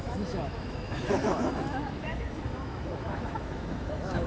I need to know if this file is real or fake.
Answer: fake